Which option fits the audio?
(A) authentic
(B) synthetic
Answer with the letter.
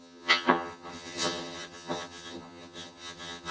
B